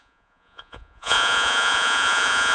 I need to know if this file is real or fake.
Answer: fake